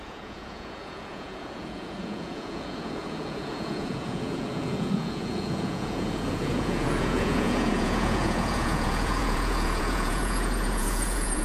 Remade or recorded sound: remade